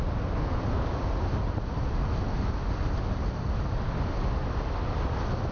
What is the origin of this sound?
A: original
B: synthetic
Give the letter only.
A